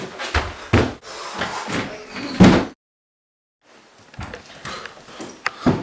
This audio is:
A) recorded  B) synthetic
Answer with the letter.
A